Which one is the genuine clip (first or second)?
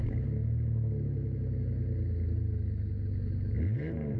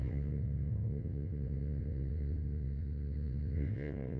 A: first